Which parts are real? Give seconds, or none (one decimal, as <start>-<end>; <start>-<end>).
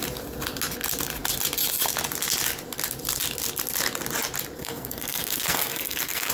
0.0-4.6